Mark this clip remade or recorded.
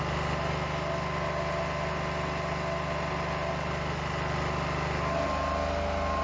recorded